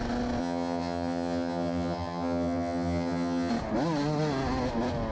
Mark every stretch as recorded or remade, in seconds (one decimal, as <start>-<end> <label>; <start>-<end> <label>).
0.0-0.4 recorded; 0.4-3.5 remade; 3.5-5.1 recorded